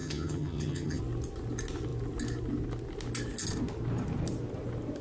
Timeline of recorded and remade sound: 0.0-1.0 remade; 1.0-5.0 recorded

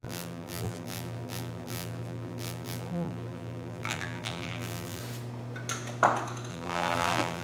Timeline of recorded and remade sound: 0.0-5.0 remade; 5.0-6.5 recorded; 6.5-7.4 remade

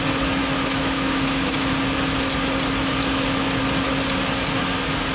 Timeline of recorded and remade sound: 0.0-0.4 recorded; 0.4-1.7 remade; 1.7-3.0 recorded; 3.0-3.6 remade; 3.6-5.1 recorded

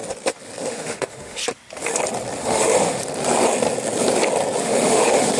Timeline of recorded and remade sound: 0.0-0.6 recorded; 0.6-1.4 remade; 1.4-2.4 recorded; 2.4-3.0 remade; 3.0-4.6 recorded; 4.6-5.4 remade

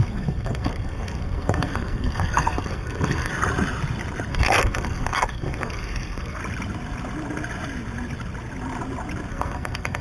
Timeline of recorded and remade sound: 0.0-3.3 remade; 3.3-4.3 recorded; 4.3-6.4 remade; 6.4-9.3 recorded; 9.3-10.0 remade

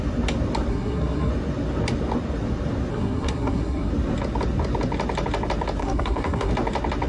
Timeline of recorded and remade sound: 0.0-0.7 recorded; 0.7-1.3 remade; 1.3-2.9 recorded; 2.9-3.9 remade; 3.9-5.8 recorded; 5.8-6.5 remade; 6.5-7.1 recorded

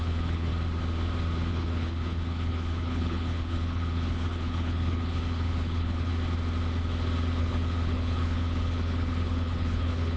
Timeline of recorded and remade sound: 0.0-0.5 remade; 0.5-1.5 recorded; 1.5-6.1 remade; 6.1-7.4 recorded; 7.4-10.2 remade